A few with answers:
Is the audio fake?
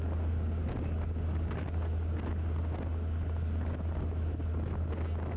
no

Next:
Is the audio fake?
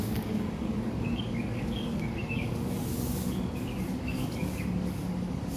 yes